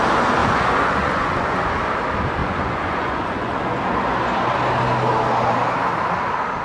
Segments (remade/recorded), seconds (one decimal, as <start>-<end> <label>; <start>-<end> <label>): 0.0-0.4 recorded; 0.4-1.7 remade; 1.7-2.4 recorded; 2.4-3.8 remade; 3.8-6.6 recorded